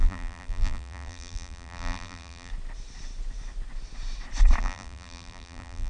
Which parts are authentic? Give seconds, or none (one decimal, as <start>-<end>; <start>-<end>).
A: 2.5-4.6